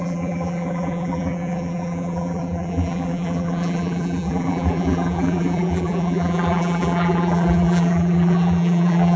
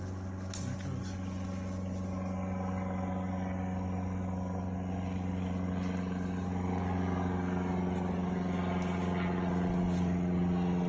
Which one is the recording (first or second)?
second